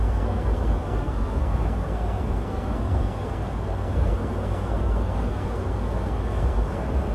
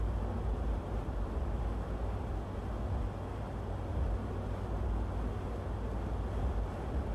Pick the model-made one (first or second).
first